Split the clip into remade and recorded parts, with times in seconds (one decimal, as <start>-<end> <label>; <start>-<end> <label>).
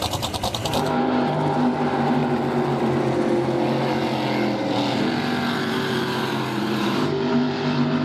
0.0-2.2 remade; 2.2-5.6 recorded; 5.6-8.0 remade